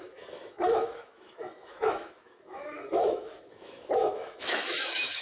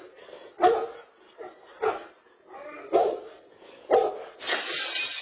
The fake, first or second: first